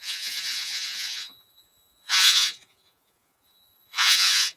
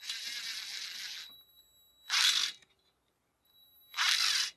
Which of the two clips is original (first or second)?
second